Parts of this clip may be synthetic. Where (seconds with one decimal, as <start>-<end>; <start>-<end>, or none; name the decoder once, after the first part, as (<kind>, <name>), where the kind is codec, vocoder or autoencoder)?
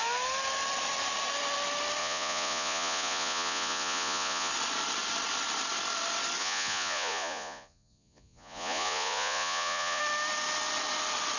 2.0-4.5 (vocoder, Vocos); 6.4-10.0